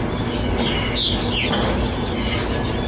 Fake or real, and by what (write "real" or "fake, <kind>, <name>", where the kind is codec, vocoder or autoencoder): real